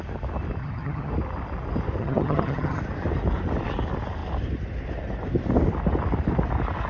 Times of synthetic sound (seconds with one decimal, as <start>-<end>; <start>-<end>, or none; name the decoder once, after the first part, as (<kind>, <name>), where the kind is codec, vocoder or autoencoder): 0.6-1.1 (vocoder, HiFi-GAN); 2.0-2.8

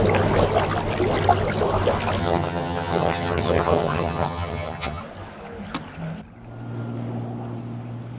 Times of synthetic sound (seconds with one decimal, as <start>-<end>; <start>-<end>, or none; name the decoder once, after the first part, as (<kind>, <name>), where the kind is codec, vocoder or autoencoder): 2.2-5.0 (vocoder, HiFi-GAN)

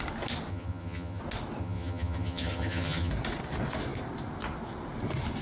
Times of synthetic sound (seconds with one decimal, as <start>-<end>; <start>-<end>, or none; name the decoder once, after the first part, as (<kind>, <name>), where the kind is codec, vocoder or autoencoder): 0.5-1.2 (vocoder, HiFi-GAN); 1.6-3.1